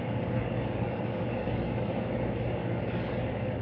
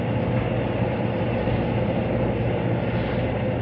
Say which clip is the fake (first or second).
first